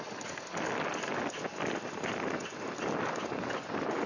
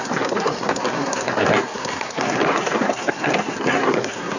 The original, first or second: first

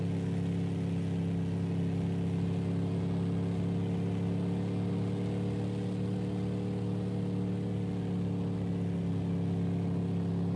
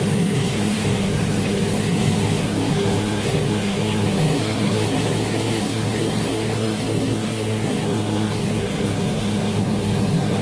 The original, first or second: first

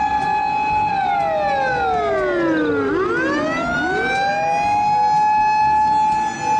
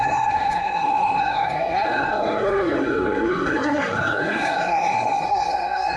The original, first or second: first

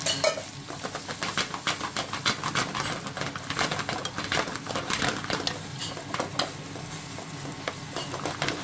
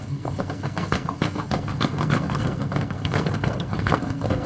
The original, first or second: first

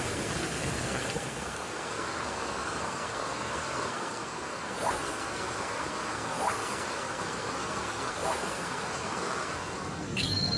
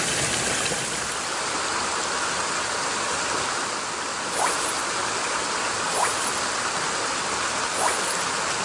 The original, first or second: second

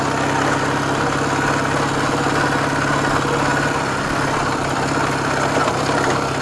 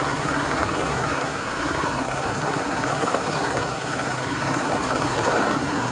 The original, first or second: first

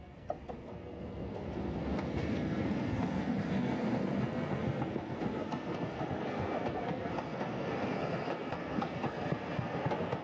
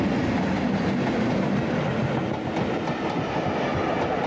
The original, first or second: second